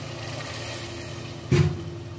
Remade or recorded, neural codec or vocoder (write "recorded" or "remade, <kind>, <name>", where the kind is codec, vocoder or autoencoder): recorded